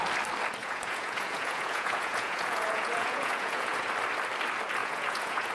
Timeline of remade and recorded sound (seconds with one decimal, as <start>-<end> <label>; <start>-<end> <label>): 0.0-0.6 recorded; 0.6-3.9 remade; 3.9-4.8 recorded; 4.8-5.5 remade